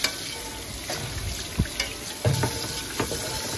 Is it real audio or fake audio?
real